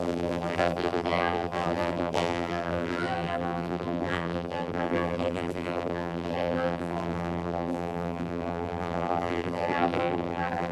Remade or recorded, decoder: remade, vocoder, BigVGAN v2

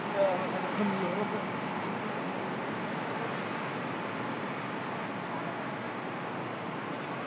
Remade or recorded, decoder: recorded